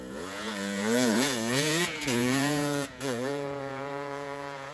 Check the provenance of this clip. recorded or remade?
remade